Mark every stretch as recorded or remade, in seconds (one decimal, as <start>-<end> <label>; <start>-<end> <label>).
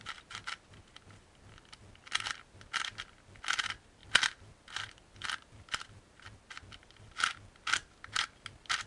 0.0-8.9 recorded